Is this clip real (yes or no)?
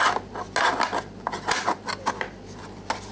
yes